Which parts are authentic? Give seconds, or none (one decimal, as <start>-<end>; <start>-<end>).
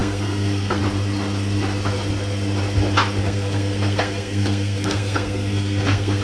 0.8-3.2